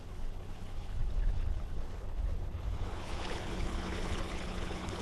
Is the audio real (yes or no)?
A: no